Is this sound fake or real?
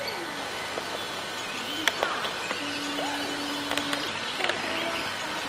real